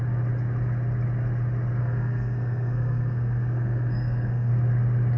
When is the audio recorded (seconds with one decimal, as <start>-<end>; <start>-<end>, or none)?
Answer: 0.0-1.8; 4.5-5.2